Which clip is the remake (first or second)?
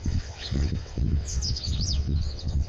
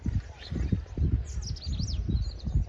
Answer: first